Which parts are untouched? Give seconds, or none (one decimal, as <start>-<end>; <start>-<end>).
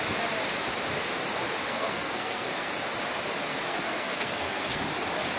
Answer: 0.0-1.6; 2.7-3.5; 4.8-5.4